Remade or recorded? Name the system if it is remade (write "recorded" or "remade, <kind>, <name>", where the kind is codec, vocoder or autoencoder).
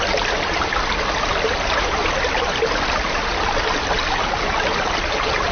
recorded